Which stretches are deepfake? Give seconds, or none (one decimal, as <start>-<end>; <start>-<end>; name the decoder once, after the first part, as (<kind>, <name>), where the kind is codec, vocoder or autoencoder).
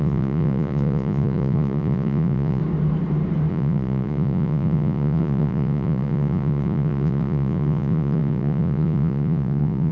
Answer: 0.0-2.6 (vocoder, Vocos); 3.5-9.9